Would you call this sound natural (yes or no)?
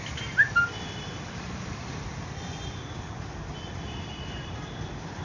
yes